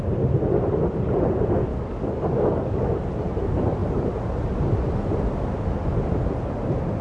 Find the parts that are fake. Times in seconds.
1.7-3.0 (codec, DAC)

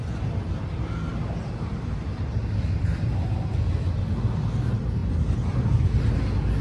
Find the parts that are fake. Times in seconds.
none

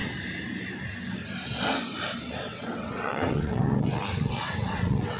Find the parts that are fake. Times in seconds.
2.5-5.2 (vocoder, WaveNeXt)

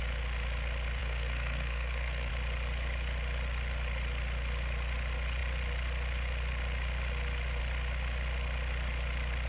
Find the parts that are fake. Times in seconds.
1.0-2.3 (codec, SNAC)

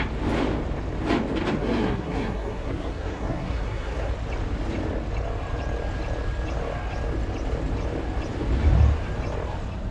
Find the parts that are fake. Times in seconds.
1.6-4.1 (codec, SNAC)

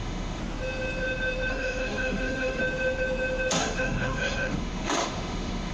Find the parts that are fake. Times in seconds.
0.0-0.4 (autoencoder, DAC-VAE); 1.5-2.6; 3.5-5.7

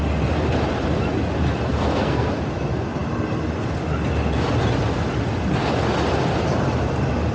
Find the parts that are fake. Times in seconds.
1.7-2.3 (codec, SNAC)

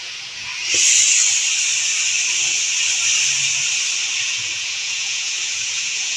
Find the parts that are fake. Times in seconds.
0.0-0.5 (vocoder, Vocos); 4.2-6.2